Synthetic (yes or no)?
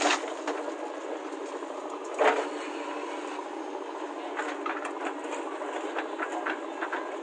no